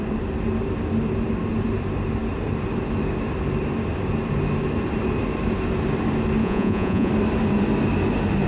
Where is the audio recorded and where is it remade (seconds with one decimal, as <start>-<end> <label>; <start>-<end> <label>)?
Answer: 0.0-6.4 recorded; 6.4-7.1 remade; 7.1-8.5 recorded